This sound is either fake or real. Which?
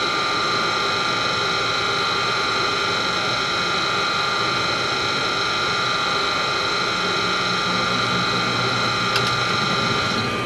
real